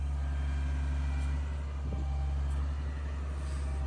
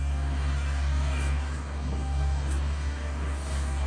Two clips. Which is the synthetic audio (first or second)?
second